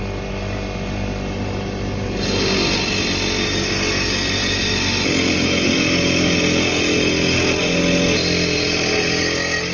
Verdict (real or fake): real